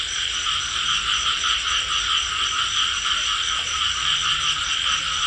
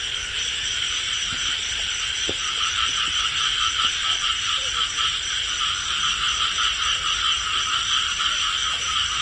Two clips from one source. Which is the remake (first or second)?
second